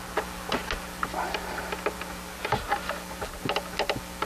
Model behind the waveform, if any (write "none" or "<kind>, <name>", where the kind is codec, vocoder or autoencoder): none